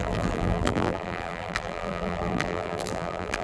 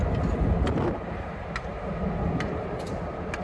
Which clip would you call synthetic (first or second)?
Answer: first